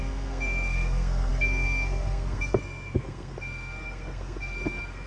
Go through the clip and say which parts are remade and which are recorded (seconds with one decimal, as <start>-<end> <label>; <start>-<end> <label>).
0.0-5.1 remade

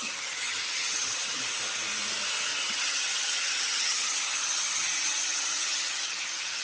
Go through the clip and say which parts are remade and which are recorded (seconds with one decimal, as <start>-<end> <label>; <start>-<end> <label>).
0.0-1.4 remade; 1.4-2.5 recorded; 2.5-6.6 remade

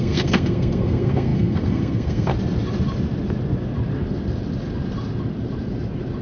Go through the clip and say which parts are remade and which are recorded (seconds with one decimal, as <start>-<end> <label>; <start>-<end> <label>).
0.0-2.3 remade; 2.3-6.2 recorded

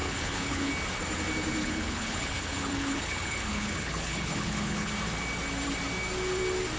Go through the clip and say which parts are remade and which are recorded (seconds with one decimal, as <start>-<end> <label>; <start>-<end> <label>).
0.0-0.7 remade; 0.7-1.6 recorded; 1.6-4.9 remade; 4.9-6.8 recorded

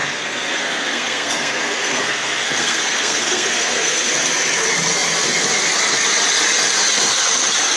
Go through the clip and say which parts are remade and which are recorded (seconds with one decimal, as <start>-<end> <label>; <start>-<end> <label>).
0.0-4.1 remade; 4.1-7.8 recorded

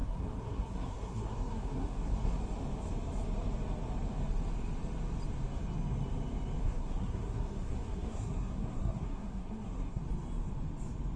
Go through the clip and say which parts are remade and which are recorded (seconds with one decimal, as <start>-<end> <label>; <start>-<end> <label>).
0.0-2.4 remade; 2.4-6.6 recorded; 6.6-10.0 remade; 10.0-11.2 recorded